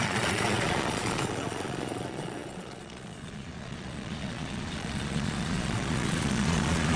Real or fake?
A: fake